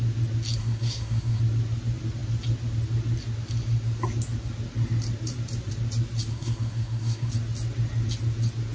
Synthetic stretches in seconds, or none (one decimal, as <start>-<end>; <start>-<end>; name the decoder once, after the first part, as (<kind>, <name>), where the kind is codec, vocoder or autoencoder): 0.6-1.4 (codec, SNAC); 6.3-7.3